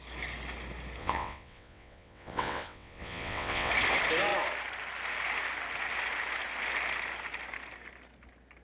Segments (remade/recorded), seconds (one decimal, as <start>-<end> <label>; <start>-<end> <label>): 0.0-1.0 recorded; 1.0-3.7 remade; 3.7-8.6 recorded